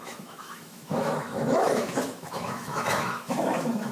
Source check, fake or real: fake